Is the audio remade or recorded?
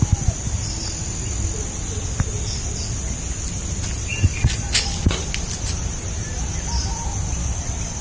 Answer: recorded